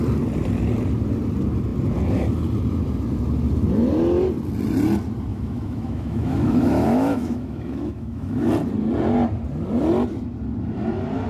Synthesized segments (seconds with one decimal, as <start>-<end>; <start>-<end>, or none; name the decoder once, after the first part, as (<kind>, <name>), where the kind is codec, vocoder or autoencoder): 5.3-8.5 (autoencoder, DAC-VAE)